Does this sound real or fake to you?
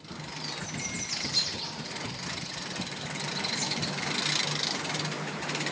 real